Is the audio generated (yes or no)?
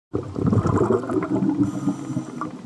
no